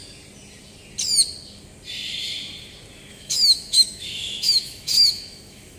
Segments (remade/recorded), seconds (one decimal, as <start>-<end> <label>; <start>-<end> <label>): 0.0-3.1 recorded; 3.1-5.8 remade